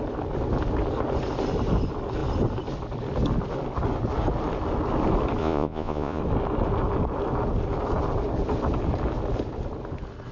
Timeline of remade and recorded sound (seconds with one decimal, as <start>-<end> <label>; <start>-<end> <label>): 0.0-5.4 recorded; 5.4-6.2 remade; 6.2-10.3 recorded